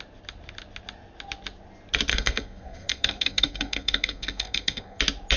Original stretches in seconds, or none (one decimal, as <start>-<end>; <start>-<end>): 0.0-2.1; 5.0-5.4